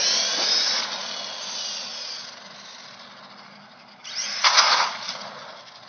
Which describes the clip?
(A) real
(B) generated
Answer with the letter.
A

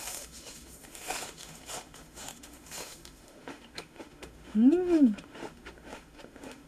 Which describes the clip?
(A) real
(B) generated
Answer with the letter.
B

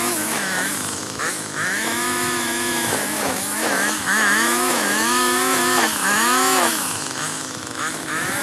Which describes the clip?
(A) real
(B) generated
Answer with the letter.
B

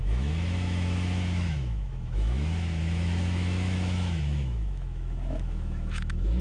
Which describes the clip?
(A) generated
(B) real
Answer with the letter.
A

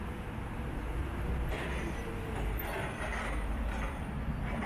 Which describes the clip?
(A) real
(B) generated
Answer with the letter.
A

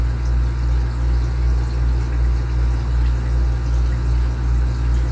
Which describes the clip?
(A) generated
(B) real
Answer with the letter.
B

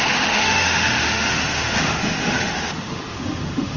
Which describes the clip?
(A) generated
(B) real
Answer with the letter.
A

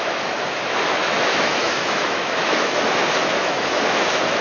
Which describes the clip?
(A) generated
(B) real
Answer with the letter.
A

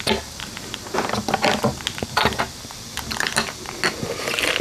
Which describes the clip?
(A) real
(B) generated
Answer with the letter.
A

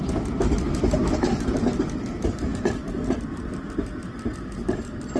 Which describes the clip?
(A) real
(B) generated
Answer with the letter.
A